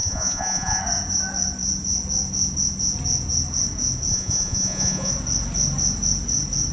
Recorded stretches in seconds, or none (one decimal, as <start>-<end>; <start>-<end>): 0.8-4.1; 5.1-6.7